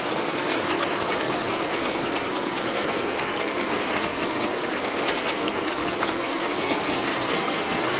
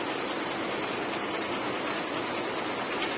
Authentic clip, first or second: second